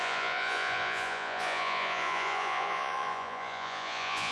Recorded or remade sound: remade